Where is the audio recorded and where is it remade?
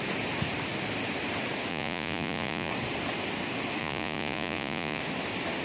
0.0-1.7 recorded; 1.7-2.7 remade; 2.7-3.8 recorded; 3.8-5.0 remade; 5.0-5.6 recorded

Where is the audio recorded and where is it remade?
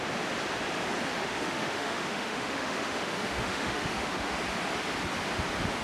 0.0-1.1 recorded; 1.1-4.4 remade; 4.4-5.8 recorded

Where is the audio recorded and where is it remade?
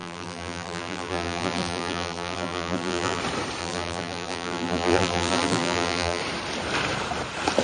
0.0-3.2 remade; 3.2-3.6 recorded; 3.6-6.2 remade; 6.2-7.6 recorded